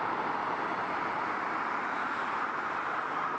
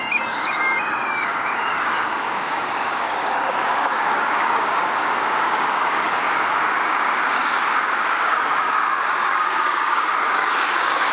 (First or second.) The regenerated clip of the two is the second